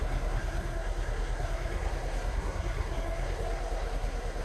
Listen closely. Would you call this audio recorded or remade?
remade